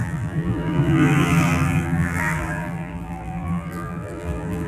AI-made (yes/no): yes